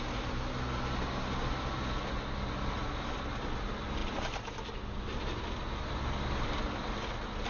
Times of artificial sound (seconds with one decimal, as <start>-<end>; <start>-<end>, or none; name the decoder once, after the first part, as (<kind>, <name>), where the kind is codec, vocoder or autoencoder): none